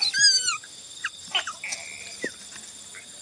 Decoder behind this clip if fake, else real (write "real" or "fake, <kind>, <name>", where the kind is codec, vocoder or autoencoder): real